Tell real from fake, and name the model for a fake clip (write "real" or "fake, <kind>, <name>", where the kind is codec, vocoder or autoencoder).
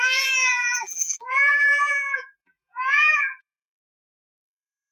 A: fake, vocoder, BigVGAN v2